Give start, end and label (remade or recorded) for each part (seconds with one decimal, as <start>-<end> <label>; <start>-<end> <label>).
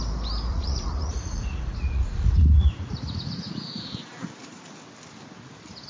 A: 0.0-0.5 recorded; 0.5-4.0 remade; 4.0-5.9 recorded